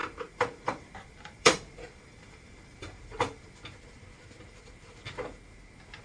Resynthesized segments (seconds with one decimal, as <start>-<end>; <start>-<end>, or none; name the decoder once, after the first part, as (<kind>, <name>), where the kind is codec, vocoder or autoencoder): 0.0-3.6 (vocoder, BigVGAN v2)